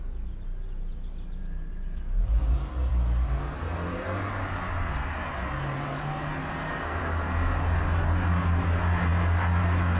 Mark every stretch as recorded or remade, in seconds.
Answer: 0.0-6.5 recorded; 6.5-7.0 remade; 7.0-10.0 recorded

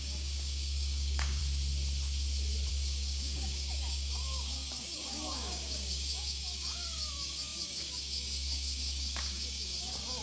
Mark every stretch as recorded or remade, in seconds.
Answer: 0.0-1.4 remade; 1.4-2.7 recorded; 2.7-10.2 remade

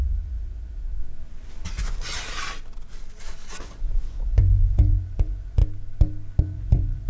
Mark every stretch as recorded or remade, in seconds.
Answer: 0.0-1.0 remade; 1.0-1.7 recorded; 1.7-2.1 remade; 2.1-3.6 recorded; 3.6-5.6 remade; 5.6-6.4 recorded; 6.4-7.1 remade

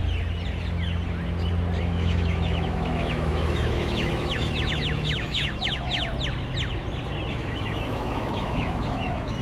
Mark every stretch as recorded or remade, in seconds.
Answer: 0.0-1.8 recorded; 1.8-6.1 remade; 6.1-7.3 recorded; 7.3-9.4 remade

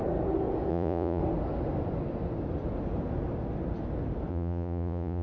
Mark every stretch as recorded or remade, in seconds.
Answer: 0.0-0.7 recorded; 0.7-1.2 remade; 1.2-4.3 recorded; 4.3-5.2 remade